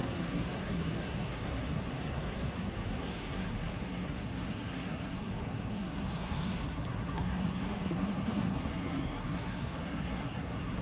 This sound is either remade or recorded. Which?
remade